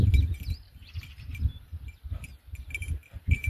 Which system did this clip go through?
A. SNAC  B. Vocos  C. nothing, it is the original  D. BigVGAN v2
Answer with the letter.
D